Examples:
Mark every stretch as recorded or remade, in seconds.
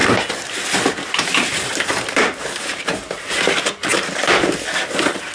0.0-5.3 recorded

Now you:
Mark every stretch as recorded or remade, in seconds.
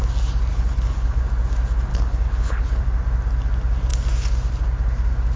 0.0-0.5 recorded; 0.5-1.2 remade; 1.2-1.9 recorded; 1.9-2.8 remade; 2.8-5.4 recorded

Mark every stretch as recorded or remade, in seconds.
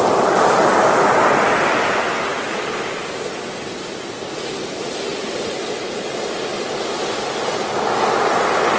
0.0-2.3 recorded; 2.3-3.0 remade; 3.0-8.8 recorded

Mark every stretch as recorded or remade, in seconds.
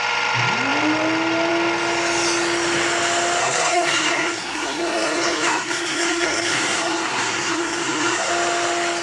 0.0-3.4 recorded; 3.4-8.3 remade; 8.3-9.0 recorded